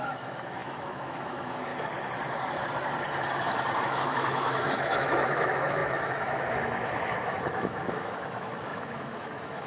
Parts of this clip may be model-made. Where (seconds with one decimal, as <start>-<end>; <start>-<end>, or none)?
0.0-1.7; 3.8-9.7